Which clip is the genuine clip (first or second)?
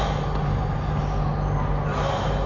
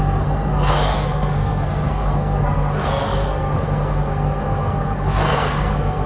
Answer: first